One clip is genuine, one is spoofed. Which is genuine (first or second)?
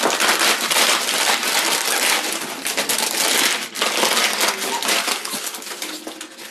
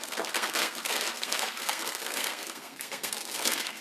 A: first